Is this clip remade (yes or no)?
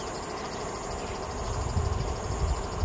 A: no